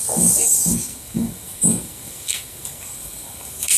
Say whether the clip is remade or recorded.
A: remade